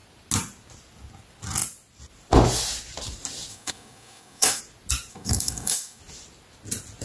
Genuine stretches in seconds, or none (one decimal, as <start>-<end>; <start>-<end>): 0.0-3.5; 4.6-5.1; 6.0-7.0